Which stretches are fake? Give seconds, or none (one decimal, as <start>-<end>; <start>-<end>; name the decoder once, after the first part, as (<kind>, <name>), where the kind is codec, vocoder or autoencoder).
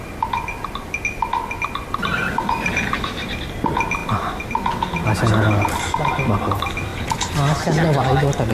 none